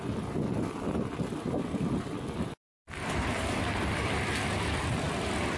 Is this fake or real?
real